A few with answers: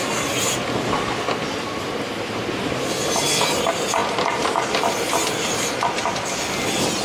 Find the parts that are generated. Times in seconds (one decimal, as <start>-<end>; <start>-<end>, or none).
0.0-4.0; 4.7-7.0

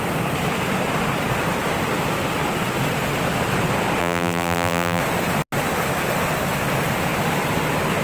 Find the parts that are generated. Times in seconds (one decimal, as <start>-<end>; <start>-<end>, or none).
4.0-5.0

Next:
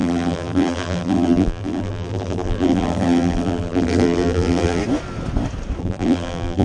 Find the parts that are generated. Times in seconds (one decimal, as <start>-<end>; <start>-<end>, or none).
0.0-4.8; 5.8-6.6

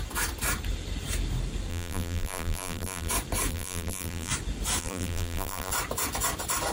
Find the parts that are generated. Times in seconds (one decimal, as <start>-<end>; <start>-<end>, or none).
1.7-3.1; 3.5-4.3; 4.8-5.7